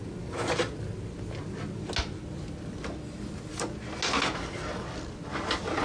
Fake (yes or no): no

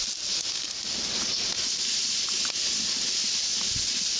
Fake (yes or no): no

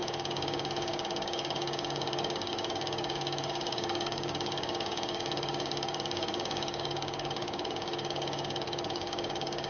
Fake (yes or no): yes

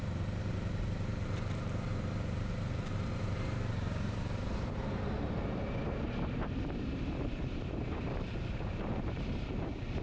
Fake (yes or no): yes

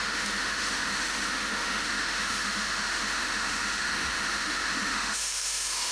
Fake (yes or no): yes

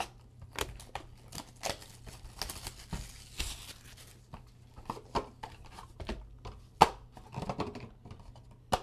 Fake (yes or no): no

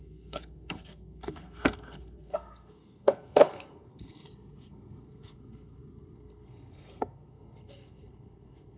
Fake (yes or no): yes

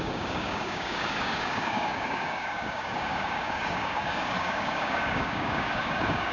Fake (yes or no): yes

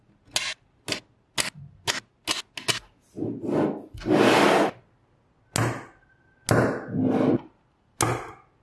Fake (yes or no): no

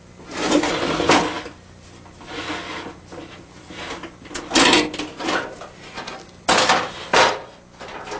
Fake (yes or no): no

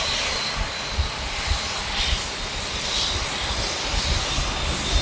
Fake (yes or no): no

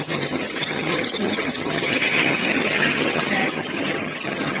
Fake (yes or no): yes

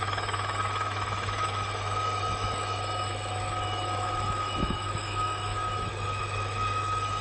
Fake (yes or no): yes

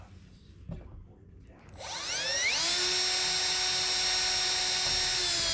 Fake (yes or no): no